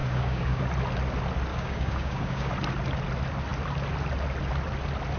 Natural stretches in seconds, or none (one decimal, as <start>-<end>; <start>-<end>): 0.6-1.5; 2.5-5.2

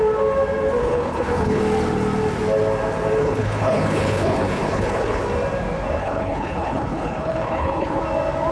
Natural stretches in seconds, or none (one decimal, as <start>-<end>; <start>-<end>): 0.0-0.8; 1.6-3.2; 5.2-6.0; 8.0-8.5